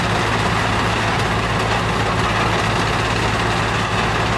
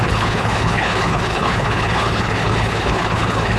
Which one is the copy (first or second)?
second